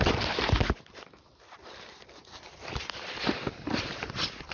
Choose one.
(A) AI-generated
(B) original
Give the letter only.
B